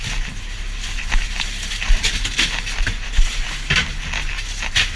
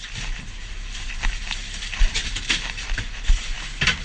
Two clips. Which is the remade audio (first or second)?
second